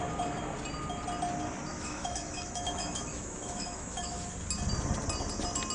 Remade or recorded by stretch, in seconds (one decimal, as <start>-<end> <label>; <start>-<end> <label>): 0.0-1.7 recorded; 1.7-4.3 remade; 4.3-5.7 recorded